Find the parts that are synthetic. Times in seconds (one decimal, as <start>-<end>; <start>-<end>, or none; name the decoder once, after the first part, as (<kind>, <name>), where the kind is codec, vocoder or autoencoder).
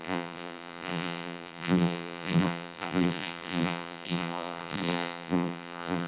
0.0-6.1 (vocoder, BigVGAN v2)